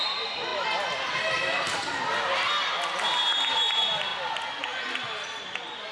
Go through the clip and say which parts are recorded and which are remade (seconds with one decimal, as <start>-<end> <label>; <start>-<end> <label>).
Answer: 0.0-5.9 recorded